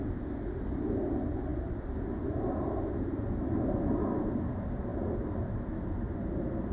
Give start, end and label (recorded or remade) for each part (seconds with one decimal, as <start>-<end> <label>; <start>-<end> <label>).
0.0-6.7 recorded